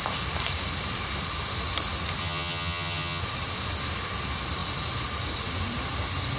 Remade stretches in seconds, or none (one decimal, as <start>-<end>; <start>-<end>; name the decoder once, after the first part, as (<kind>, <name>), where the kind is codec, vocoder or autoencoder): 2.2-3.2 (vocoder, HiFi-GAN)